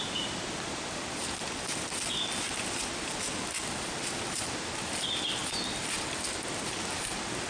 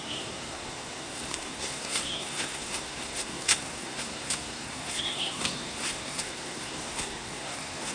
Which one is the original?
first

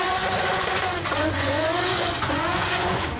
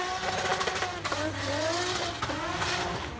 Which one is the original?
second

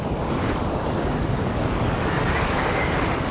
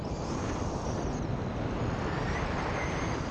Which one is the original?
second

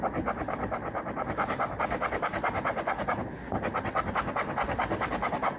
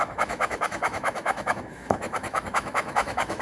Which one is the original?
first